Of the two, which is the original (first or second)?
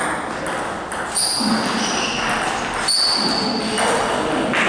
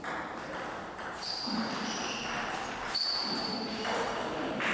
first